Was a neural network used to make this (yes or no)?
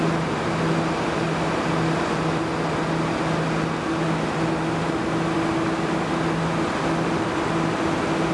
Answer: no